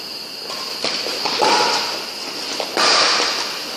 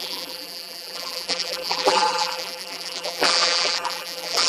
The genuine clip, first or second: first